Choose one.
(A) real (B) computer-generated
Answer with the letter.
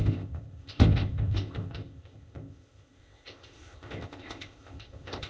B